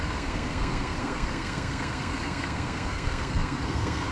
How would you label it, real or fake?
fake